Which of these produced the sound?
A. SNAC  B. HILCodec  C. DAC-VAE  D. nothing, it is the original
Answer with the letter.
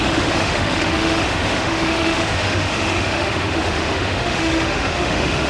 C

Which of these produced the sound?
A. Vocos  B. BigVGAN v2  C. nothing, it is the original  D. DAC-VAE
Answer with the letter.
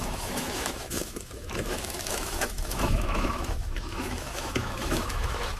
D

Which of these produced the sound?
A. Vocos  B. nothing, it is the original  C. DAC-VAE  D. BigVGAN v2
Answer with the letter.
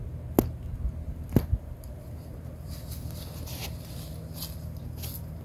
B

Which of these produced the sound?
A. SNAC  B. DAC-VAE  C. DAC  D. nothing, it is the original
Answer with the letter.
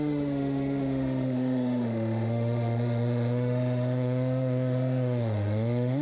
B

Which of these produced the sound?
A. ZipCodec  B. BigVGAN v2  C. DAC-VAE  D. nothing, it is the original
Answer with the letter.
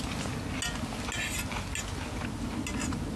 D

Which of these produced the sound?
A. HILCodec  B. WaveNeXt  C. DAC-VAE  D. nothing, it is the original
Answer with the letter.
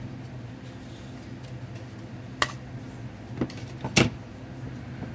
D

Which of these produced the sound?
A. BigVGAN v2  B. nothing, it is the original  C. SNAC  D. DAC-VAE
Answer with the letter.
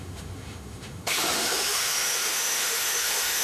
D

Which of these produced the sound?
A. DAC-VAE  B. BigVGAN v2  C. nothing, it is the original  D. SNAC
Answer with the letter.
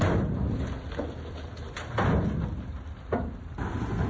C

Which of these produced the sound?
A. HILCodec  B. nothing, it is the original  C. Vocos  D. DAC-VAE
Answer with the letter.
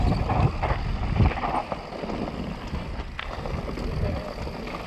B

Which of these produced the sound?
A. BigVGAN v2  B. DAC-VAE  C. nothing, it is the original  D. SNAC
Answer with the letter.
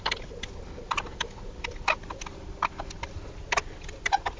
C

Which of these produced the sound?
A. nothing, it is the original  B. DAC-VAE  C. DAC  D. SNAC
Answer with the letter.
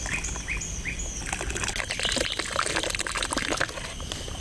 A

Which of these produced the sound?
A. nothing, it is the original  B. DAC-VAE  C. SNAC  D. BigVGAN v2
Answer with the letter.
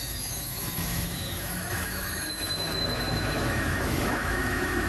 B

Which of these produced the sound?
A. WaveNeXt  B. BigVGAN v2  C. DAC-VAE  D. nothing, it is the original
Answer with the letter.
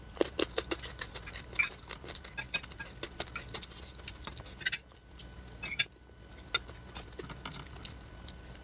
D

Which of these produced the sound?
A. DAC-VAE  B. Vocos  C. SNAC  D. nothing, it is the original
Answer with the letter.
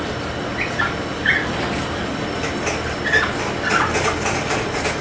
D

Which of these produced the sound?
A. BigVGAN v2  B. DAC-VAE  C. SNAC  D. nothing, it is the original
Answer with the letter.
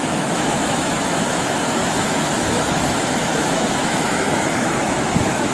B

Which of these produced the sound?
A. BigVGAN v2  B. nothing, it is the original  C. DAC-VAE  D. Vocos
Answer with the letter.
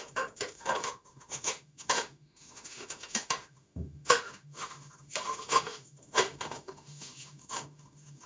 C